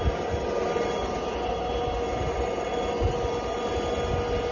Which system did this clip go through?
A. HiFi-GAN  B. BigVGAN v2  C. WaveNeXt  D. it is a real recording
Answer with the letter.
D